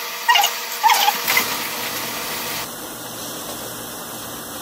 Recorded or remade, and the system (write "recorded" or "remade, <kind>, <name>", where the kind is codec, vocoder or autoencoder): recorded